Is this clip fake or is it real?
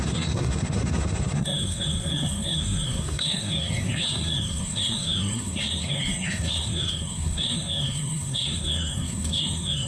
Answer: fake